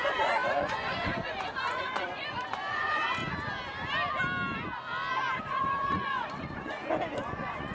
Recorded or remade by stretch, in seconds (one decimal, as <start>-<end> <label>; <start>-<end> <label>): 0.0-3.2 remade; 3.2-5.4 recorded; 5.4-6.8 remade; 6.8-7.3 recorded; 7.3-7.7 remade